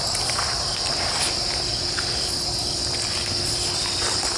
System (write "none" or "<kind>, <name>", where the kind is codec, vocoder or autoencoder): none